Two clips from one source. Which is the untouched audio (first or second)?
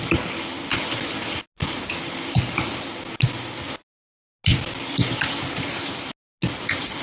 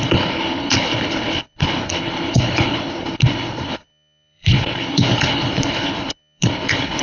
first